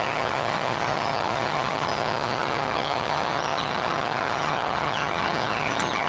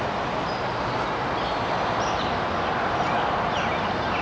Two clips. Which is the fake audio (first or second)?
first